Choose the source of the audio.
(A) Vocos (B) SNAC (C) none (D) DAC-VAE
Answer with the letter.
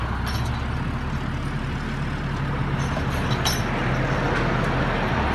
C